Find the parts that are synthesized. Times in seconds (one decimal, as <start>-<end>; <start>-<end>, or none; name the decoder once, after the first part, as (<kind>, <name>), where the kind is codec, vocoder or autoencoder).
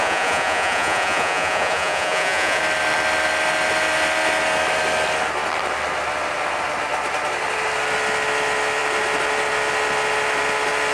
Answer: 0.0-2.6 (vocoder, Vocos)